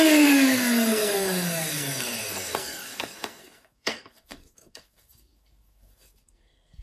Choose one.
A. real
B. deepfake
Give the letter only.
B